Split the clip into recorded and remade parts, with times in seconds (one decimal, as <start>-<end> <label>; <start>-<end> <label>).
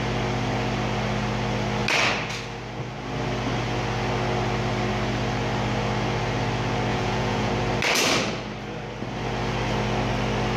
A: 0.0-6.9 recorded; 6.9-7.5 remade; 7.5-10.6 recorded